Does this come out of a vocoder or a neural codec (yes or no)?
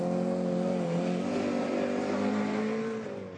no